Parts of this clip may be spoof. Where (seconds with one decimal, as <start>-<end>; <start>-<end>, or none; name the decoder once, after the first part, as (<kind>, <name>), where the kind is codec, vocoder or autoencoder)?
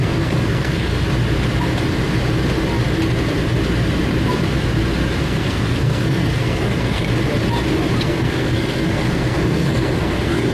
0.0-0.9 (codec, SNAC); 5.2-7.1; 8.0-10.5